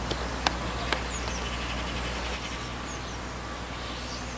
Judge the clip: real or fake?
real